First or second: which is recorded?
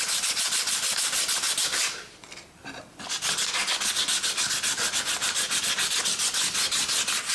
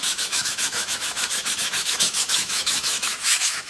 first